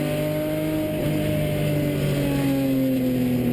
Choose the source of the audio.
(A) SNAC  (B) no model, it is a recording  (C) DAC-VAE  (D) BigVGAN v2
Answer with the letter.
B